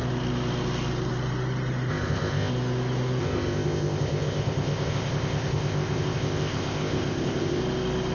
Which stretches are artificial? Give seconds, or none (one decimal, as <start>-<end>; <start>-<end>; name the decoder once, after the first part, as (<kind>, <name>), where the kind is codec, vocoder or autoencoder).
1.9-2.5 (codec, ZipCodec); 3.2-7.6